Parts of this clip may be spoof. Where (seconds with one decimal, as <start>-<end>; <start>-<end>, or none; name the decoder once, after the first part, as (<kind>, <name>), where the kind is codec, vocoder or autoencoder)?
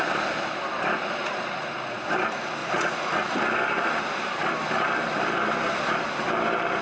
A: 1.2-2.0 (vocoder, Vocos); 2.6-3.4